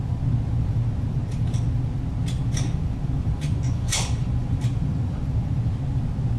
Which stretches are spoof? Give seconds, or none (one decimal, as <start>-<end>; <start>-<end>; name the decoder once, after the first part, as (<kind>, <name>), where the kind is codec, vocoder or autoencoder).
3.3-5.2 (vocoder, Vocos)